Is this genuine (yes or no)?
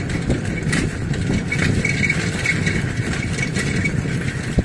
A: yes